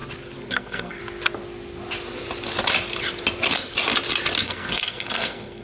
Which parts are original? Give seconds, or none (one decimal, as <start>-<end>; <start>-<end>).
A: 0.0-0.5; 1.0-4.4

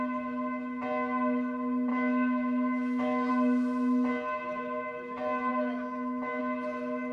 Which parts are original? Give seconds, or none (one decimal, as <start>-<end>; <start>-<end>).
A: 0.0-1.9; 3.3-5.5; 6.4-7.1